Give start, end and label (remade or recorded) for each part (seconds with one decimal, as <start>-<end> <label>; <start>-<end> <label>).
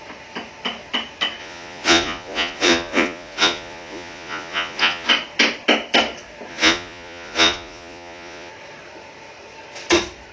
0.0-1.4 recorded; 1.4-5.1 remade; 5.1-6.5 recorded; 6.5-8.5 remade; 8.5-10.3 recorded